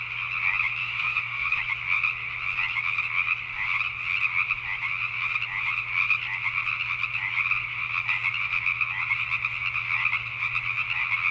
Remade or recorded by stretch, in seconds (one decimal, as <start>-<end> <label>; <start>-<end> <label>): 0.0-0.8 recorded; 0.8-1.6 remade; 1.6-11.3 recorded